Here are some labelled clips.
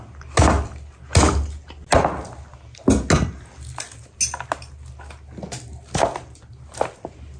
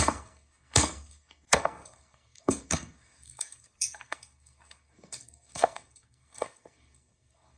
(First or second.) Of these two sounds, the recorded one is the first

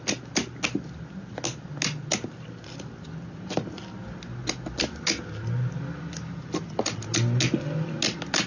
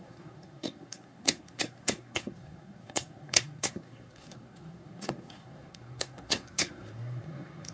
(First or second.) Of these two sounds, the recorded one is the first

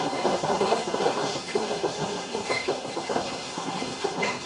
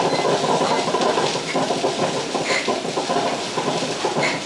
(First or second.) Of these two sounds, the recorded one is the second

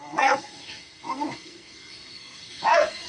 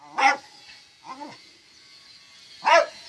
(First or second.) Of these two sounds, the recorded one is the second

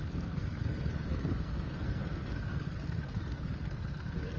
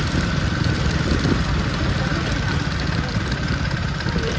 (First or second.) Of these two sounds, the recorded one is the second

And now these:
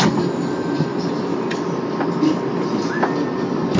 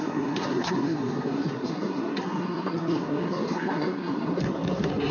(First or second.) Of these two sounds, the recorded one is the first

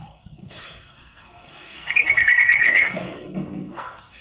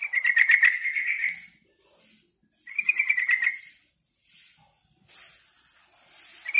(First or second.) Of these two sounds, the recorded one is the second